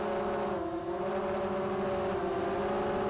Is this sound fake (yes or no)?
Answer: no